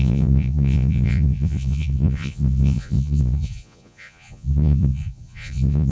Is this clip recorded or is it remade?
remade